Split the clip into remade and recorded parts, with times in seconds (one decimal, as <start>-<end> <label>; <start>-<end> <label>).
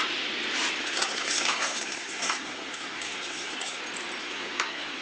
0.0-0.8 recorded; 0.8-3.8 remade; 3.8-4.2 recorded; 4.2-5.0 remade